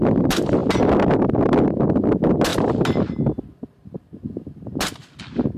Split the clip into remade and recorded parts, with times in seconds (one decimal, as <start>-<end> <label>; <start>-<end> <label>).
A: 0.0-5.6 recorded